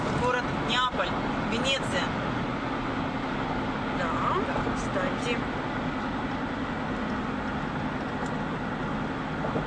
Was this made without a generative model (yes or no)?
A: yes